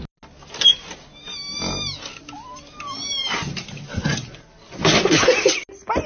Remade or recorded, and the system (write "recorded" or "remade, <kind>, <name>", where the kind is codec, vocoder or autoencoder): recorded